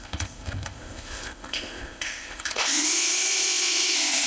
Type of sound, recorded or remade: remade